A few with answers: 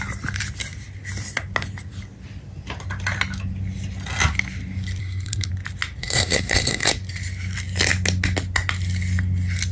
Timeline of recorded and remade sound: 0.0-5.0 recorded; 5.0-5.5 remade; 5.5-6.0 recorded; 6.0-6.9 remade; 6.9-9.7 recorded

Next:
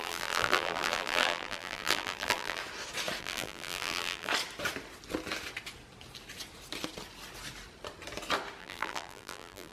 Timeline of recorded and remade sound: 0.0-2.6 remade; 2.6-3.2 recorded; 3.2-4.3 remade; 4.3-8.6 recorded; 8.6-9.7 remade

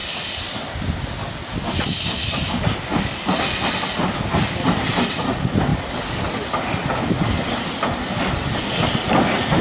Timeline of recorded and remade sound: 0.0-9.6 recorded

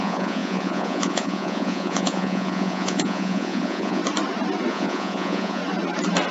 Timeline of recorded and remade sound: 0.0-4.0 remade; 4.0-4.7 recorded; 4.7-5.6 remade; 5.6-6.3 recorded

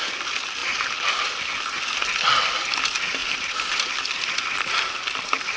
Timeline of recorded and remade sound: 0.0-5.6 recorded